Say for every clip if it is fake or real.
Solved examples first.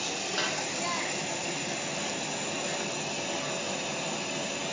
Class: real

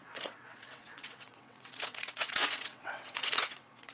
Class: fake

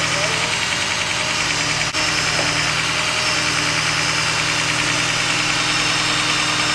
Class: real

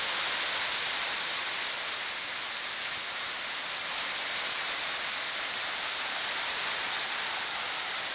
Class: real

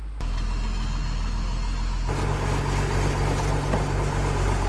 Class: real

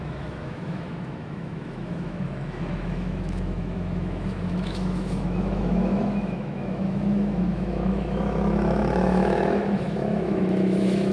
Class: fake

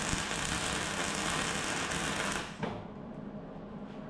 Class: real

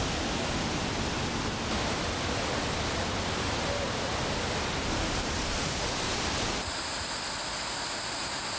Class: real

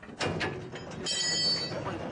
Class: real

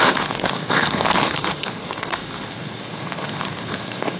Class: fake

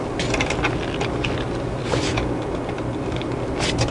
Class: real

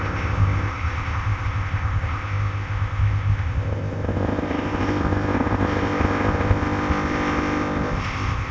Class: fake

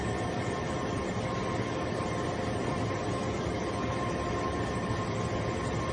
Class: real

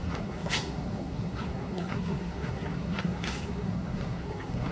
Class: fake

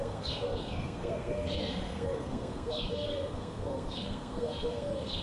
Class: fake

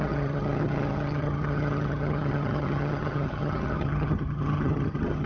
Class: fake